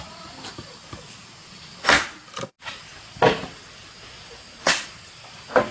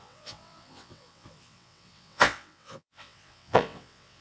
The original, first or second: first